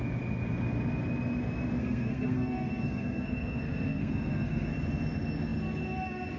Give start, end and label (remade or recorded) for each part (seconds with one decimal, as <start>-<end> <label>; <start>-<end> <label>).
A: 0.0-1.8 recorded; 1.8-4.7 remade; 4.7-6.4 recorded